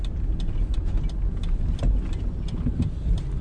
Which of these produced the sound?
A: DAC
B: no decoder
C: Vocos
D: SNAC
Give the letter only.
B